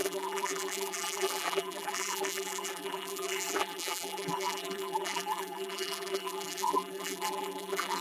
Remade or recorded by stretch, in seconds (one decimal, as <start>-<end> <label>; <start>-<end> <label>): 0.0-8.0 remade